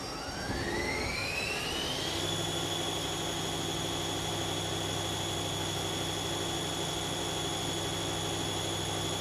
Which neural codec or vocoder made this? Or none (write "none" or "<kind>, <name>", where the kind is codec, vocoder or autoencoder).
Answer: none